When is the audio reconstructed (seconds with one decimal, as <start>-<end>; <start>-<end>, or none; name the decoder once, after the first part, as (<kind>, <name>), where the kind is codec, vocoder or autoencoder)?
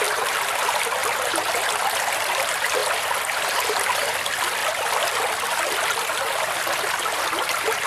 0.0-1.0 (vocoder, BigVGAN v2); 2.1-2.8; 3.4-4.6